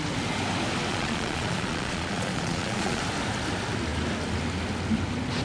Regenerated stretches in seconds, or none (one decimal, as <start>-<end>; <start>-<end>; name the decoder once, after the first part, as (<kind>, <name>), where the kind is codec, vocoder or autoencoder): 0.9-3.0 (vocoder, Vocos)